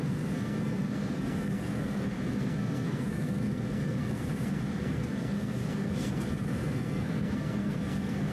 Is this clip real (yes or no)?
no